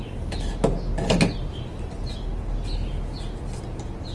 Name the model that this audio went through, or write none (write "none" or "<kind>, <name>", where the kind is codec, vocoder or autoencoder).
none